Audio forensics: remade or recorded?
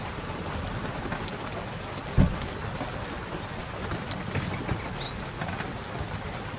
recorded